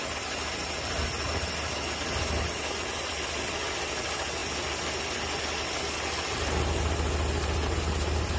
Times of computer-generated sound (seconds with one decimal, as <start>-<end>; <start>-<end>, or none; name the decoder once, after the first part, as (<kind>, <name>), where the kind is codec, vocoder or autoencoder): none